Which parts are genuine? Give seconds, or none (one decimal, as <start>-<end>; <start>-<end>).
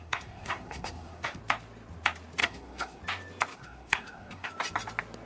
1.4-2.4; 3.0-3.5; 4.5-5.3